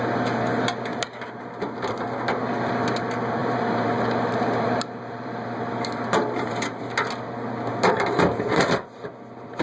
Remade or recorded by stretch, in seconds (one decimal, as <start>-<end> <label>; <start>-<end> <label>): 0.0-0.9 recorded; 0.9-1.6 remade; 1.6-3.4 recorded; 3.4-6.8 remade; 6.8-7.7 recorded; 7.7-8.7 remade; 8.7-9.6 recorded